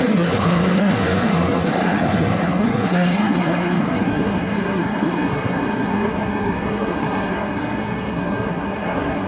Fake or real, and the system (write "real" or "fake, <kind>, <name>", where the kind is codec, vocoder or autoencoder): fake, codec, SNAC